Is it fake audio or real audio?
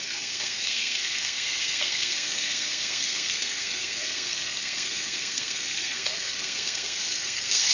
fake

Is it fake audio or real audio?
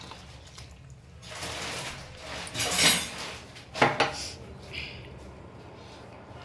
real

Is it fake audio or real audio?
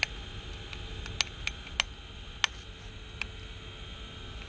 real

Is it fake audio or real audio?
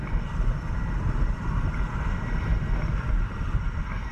real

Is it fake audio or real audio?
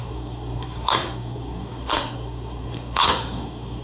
fake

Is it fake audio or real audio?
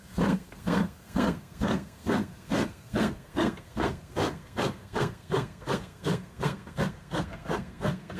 fake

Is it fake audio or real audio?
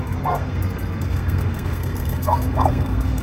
fake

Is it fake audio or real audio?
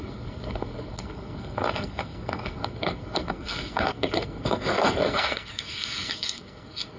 fake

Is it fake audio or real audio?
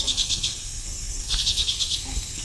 fake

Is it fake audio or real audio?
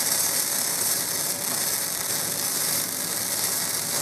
real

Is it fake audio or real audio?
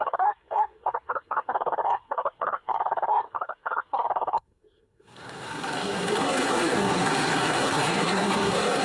fake